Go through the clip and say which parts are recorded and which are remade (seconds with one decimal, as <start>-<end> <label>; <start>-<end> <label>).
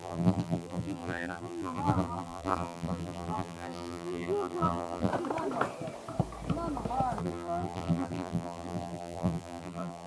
0.0-5.1 remade; 5.1-7.2 recorded; 7.2-10.1 remade